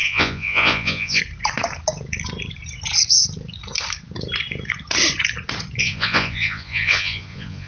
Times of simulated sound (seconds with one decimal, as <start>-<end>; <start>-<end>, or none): 0.0-1.2; 5.8-7.7

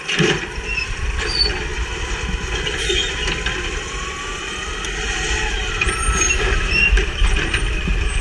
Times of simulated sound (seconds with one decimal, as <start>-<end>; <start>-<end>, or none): 0.0-1.7; 5.7-8.2

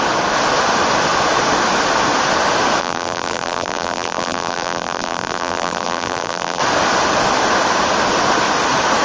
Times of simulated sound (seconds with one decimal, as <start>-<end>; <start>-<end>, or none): 2.8-6.6

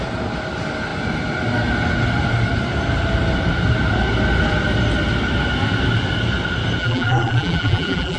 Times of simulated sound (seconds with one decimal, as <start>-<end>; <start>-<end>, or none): 6.8-8.2